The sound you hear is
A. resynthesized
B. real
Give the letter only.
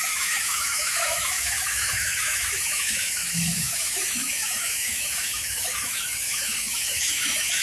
A